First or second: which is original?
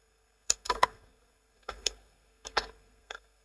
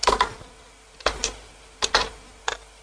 second